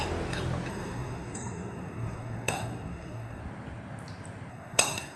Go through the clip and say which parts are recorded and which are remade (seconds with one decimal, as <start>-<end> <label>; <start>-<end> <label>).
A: 0.0-0.7 recorded; 0.7-3.4 remade; 3.4-4.5 recorded; 4.5-5.2 remade